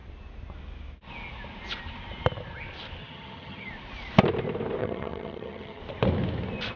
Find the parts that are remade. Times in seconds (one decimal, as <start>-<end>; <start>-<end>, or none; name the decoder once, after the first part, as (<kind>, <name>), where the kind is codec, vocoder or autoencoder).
3.0-3.7 (vocoder, HiFi-GAN); 4.8-5.8